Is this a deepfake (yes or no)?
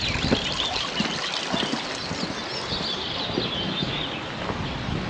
no